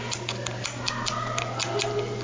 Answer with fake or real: real